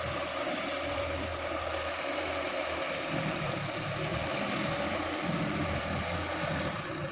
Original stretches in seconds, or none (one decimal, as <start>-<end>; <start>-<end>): 1.3-3.0

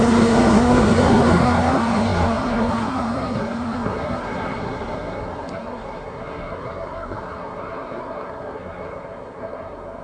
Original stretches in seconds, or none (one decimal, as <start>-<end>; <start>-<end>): none